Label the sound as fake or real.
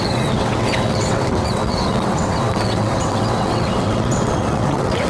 fake